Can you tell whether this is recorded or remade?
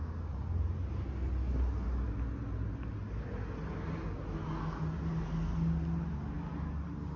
recorded